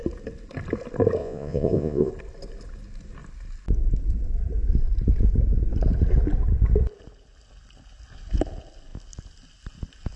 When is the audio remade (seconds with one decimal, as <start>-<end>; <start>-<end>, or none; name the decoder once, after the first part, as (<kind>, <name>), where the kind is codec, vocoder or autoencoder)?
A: 1.2-2.1 (vocoder, Vocos)